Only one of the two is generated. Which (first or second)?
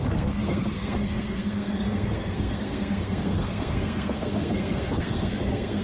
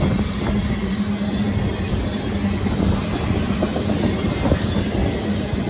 first